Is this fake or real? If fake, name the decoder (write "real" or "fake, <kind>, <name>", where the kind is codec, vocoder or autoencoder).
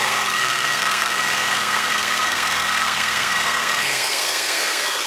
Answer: fake, codec, SNAC